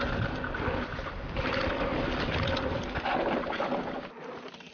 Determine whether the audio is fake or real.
real